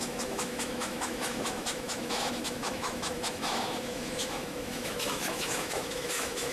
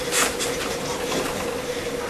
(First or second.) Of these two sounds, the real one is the second